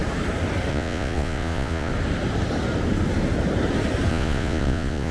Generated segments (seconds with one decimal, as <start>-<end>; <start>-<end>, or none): 0.7-1.9; 4.1-5.1